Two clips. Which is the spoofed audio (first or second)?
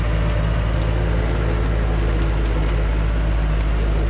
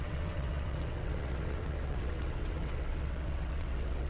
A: second